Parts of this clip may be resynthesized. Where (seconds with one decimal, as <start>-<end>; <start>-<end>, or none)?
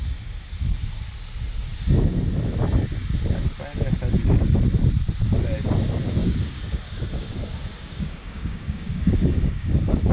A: 6.2-10.1